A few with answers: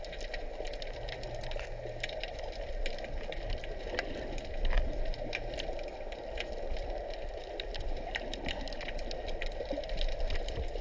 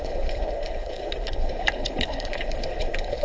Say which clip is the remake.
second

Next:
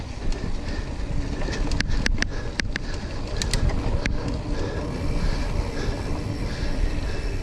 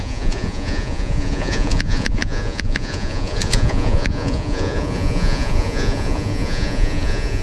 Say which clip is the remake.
second